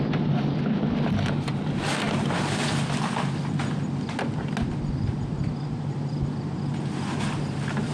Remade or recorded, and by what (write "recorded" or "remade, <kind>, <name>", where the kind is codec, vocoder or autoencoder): recorded